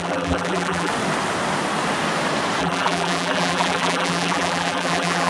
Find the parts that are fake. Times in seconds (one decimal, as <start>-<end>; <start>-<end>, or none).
0.0-0.9; 2.6-5.3